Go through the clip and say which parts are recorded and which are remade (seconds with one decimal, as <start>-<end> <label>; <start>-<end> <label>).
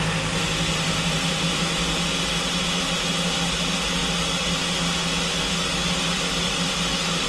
0.0-7.3 recorded